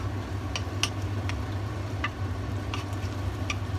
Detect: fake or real real